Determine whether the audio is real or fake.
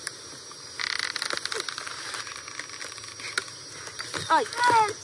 real